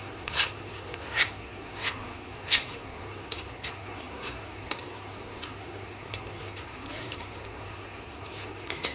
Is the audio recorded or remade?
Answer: remade